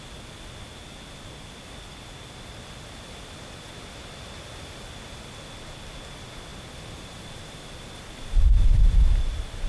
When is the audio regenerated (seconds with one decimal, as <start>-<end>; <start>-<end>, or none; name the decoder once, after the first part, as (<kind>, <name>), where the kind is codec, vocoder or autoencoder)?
none